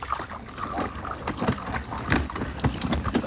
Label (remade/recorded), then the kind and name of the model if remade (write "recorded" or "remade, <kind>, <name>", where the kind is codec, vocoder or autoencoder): recorded